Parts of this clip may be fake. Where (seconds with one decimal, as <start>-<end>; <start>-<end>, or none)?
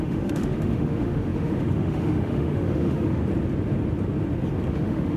0.0-3.2; 4.7-5.2